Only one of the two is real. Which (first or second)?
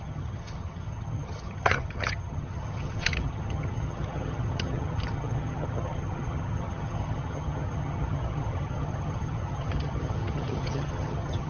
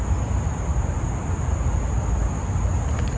second